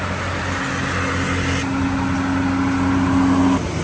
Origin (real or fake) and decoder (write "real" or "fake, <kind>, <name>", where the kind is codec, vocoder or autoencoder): real